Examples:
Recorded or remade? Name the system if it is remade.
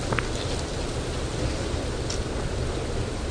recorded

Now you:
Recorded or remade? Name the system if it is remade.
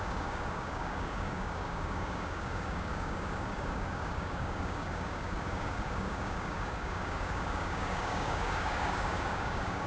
remade, codec, DAC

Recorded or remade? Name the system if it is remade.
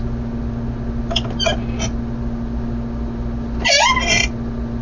recorded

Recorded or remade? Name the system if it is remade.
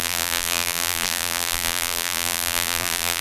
remade, vocoder, BigVGAN v2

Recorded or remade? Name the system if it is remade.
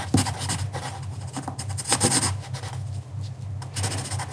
recorded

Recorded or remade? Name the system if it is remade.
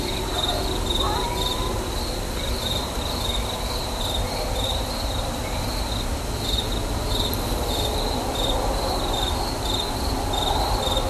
recorded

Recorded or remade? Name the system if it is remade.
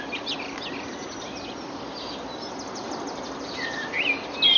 recorded